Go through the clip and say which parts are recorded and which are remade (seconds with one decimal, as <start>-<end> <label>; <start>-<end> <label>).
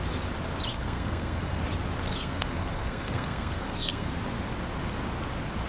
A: 0.0-0.7 recorded; 0.7-1.6 remade; 1.6-2.1 recorded; 2.1-4.1 remade; 4.1-5.7 recorded